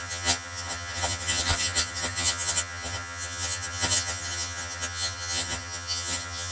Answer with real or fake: fake